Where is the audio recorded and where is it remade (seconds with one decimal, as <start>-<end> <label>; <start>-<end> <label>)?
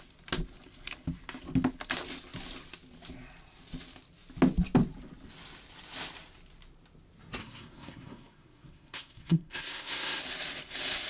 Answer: 0.0-7.4 recorded; 7.4-10.2 remade; 10.2-11.1 recorded